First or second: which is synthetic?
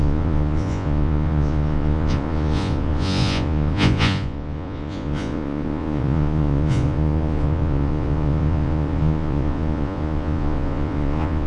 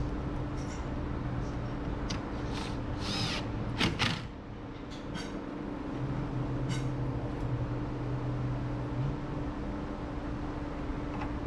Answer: first